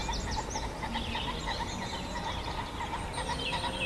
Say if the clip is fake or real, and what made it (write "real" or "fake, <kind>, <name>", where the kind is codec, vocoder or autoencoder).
real